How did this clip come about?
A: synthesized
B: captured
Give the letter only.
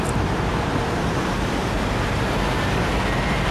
A